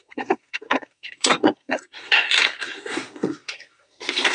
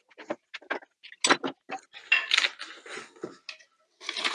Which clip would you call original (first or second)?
second